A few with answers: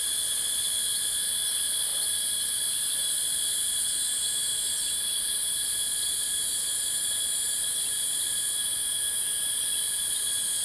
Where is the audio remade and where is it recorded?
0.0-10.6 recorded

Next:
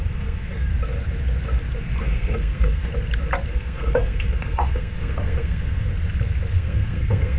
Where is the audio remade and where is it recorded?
0.0-0.7 remade; 0.7-2.0 recorded; 2.0-2.9 remade; 2.9-3.5 recorded; 3.5-5.9 remade; 5.9-6.5 recorded; 6.5-7.4 remade

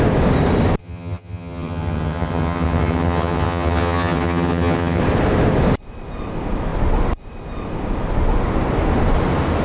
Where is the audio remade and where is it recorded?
0.0-0.8 recorded; 0.8-5.0 remade; 5.0-9.6 recorded

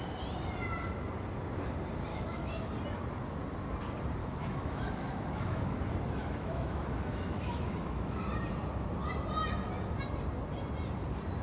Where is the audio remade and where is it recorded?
0.0-2.1 recorded; 2.1-2.7 remade; 2.7-4.2 recorded; 4.2-5.8 remade; 5.8-6.2 recorded; 6.2-8.2 remade; 8.2-11.4 recorded

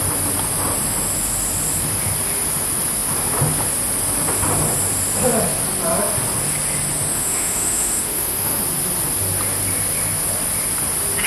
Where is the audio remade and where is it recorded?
0.0-7.1 recorded; 7.1-8.6 remade; 8.6-11.3 recorded

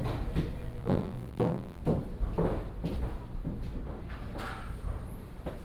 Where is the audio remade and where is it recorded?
0.0-0.6 recorded; 0.6-1.8 remade; 1.8-5.6 recorded

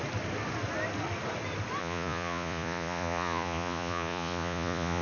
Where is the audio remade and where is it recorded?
0.0-1.8 recorded; 1.8-5.0 remade

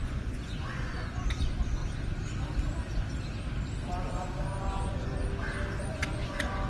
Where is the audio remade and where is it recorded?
0.0-1.8 remade; 1.8-4.6 recorded; 4.6-5.2 remade; 5.2-5.8 recorded; 5.8-6.7 remade